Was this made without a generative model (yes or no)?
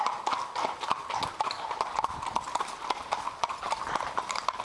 yes